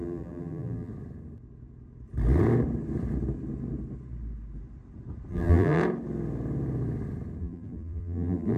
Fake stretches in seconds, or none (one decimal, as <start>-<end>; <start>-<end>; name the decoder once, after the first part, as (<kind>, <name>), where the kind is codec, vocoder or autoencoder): 0.0-0.9 (vocoder, BigVGAN v2); 5.3-5.8; 7.4-8.6